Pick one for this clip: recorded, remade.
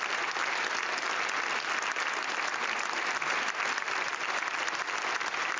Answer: recorded